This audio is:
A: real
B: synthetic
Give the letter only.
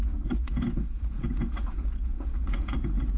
B